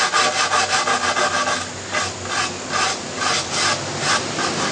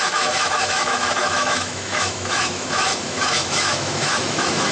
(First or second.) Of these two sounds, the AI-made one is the second